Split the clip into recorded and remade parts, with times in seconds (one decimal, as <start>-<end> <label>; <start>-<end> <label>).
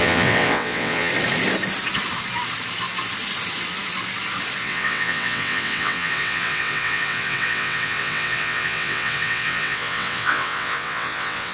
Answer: 0.0-1.1 remade; 1.1-4.6 recorded; 4.6-11.5 remade